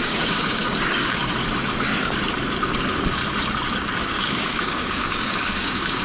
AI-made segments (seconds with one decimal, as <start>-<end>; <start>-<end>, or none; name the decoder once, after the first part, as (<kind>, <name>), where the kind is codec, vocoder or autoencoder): 0.0-1.2 (codec, DAC); 2.8-3.2; 4.0-6.0